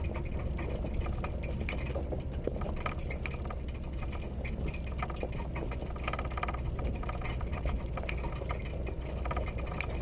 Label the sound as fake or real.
real